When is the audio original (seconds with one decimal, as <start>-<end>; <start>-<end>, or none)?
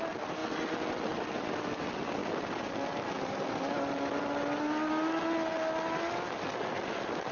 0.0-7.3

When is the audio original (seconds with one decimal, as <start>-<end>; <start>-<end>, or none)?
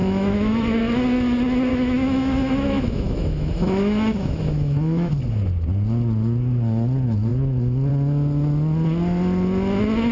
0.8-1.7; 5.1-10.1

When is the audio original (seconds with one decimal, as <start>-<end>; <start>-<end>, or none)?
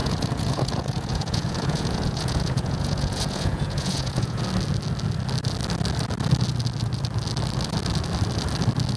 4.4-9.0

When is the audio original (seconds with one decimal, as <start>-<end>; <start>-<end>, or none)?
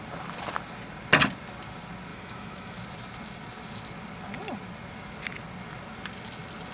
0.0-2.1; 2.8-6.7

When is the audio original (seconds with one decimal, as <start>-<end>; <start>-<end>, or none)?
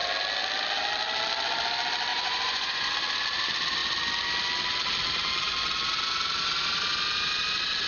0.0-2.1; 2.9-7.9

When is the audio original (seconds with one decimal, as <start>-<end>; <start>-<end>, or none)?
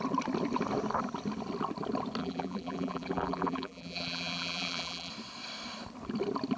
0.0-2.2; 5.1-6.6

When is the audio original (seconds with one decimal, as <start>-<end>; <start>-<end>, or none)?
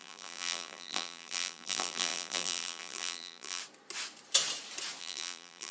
3.6-5.0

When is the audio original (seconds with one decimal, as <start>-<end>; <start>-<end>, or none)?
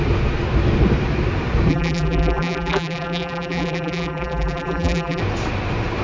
0.0-1.7; 5.2-6.0